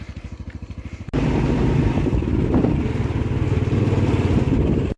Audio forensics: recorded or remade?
recorded